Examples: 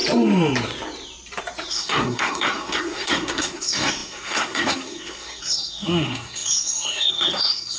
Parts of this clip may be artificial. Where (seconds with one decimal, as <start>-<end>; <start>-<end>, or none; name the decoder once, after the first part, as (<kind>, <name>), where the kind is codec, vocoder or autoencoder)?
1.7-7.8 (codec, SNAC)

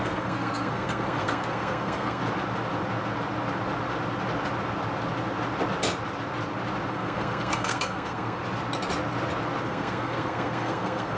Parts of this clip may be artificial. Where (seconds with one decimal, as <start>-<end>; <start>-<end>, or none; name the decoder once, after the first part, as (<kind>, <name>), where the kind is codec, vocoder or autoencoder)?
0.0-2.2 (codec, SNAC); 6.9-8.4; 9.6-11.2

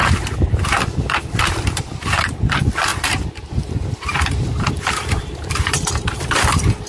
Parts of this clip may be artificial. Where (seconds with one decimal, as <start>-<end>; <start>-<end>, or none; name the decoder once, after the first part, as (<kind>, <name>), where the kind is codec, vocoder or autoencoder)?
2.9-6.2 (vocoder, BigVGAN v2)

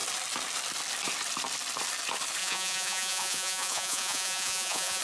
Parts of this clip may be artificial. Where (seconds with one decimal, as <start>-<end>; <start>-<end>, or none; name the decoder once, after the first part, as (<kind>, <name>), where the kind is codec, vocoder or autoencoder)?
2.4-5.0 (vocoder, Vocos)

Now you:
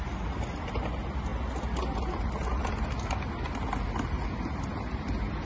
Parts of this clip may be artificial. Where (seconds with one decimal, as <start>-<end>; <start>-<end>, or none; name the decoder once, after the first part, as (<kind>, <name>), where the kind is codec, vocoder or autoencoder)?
none